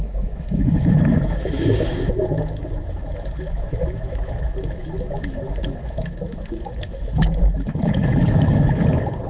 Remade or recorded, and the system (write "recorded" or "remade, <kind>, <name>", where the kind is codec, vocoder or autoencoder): remade, autoencoder, DAC-VAE